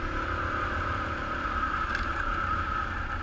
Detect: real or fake real